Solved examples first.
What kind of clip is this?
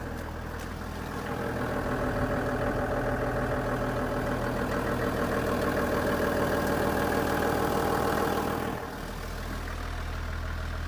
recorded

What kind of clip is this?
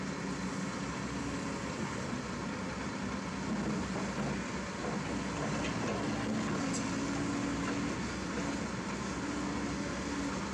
recorded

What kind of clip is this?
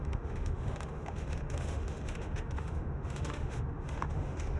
remade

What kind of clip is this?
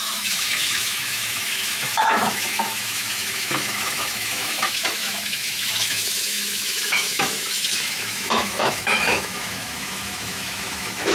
remade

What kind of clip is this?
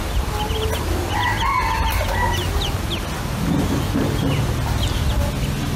recorded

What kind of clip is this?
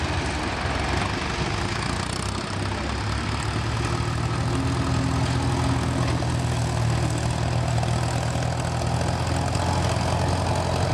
recorded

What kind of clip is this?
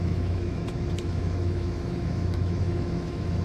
remade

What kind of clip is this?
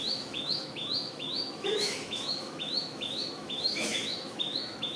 remade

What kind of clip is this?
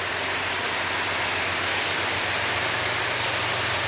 recorded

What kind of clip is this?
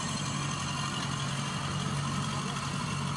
recorded